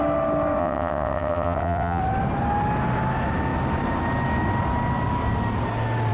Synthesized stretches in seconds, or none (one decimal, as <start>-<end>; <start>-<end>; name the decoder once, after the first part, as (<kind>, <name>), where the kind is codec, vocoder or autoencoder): 0.6-2.0 (vocoder, WaveNeXt)

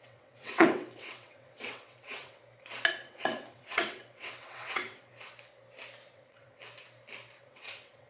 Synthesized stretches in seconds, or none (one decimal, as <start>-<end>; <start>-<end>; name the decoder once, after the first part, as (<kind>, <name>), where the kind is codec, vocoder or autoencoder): 0.0-2.4 (vocoder, WaveNeXt); 2.9-5.1; 6.1-6.6; 7.4-8.1

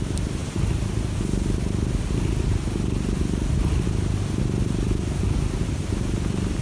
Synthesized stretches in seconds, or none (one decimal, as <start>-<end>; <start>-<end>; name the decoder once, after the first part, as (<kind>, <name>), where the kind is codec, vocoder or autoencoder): none

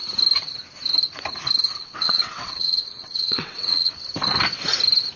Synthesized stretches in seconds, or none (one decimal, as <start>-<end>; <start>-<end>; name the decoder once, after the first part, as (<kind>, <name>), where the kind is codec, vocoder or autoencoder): 1.8-3.9 (vocoder, WaveNeXt)

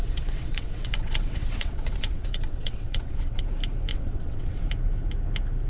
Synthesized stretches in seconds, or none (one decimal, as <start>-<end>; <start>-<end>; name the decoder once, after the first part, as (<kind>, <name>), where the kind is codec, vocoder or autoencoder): 0.0-3.4 (vocoder, WaveNeXt); 3.9-4.6

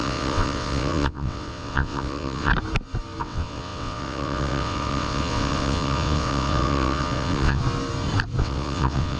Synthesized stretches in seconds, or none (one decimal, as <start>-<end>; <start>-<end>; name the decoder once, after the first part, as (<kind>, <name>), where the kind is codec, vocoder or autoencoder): 0.0-2.5 (vocoder, WaveNeXt); 3.2-7.6; 8.4-9.2

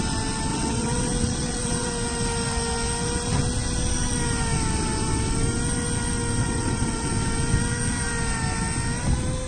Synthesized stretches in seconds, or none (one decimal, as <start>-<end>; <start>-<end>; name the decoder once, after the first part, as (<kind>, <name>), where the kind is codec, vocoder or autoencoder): 0.5-1.9 (vocoder, WaveNeXt); 6.4-7.1